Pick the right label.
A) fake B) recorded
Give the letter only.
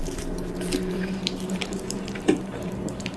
A